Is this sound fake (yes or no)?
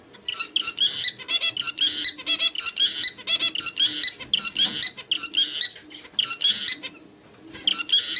no